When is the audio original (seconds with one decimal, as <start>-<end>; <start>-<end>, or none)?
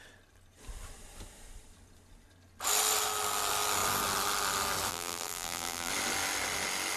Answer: 0.0-4.9; 5.9-7.0